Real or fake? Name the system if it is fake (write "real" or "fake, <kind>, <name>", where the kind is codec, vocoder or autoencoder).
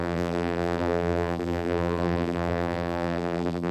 fake, vocoder, BigVGAN v2